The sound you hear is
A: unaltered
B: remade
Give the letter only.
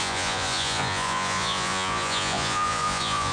B